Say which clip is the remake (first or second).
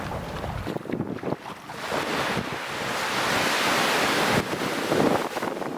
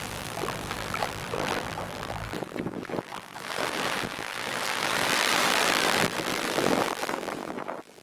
second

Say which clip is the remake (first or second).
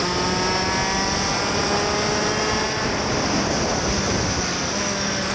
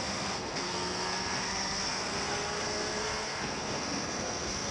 second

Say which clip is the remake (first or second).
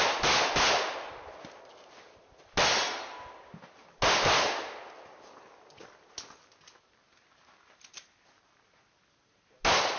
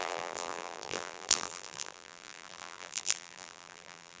second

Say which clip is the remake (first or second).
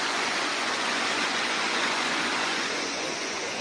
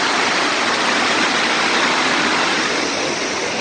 first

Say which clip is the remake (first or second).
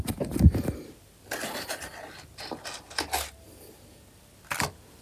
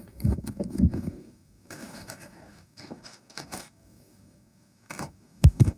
second